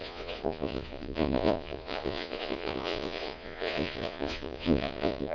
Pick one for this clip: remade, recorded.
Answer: remade